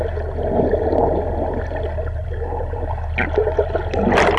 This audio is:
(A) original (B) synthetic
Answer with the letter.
A